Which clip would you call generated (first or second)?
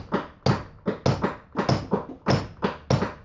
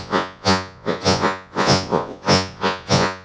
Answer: second